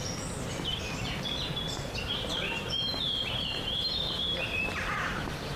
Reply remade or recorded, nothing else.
remade